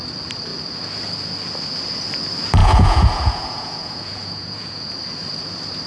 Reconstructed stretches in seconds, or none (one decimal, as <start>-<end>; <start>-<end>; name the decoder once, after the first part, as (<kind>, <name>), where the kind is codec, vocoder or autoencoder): 2.6-4.9 (vocoder, Vocos)